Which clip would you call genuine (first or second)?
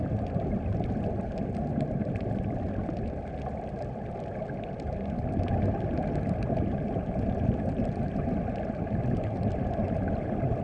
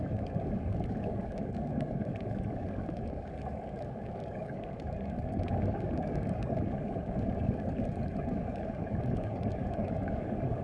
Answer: first